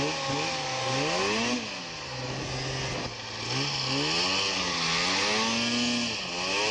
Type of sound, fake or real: real